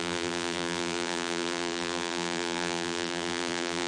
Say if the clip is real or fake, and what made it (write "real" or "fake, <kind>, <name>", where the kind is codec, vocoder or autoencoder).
fake, vocoder, BigVGAN v2